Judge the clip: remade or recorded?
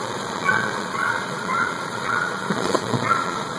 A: remade